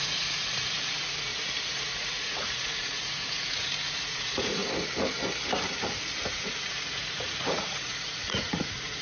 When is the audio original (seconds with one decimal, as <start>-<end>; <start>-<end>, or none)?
1.3-1.9; 4.6-6.3